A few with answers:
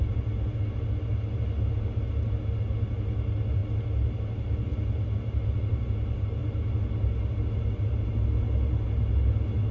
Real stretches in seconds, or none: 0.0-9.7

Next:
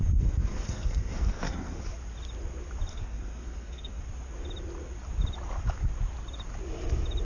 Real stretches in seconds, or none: 1.8-2.9; 4.0-7.2

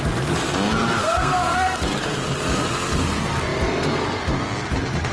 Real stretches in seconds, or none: 0.0-1.0; 1.8-5.1

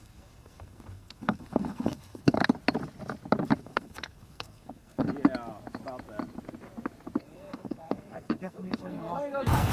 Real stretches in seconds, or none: 2.4-3.6; 5.1-7.2

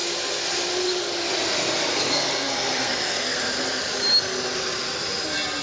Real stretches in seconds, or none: 0.0-1.9; 3.4-5.6

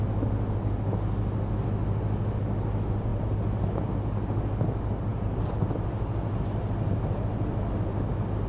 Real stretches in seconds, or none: 0.0-8.5